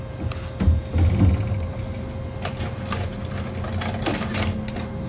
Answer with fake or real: real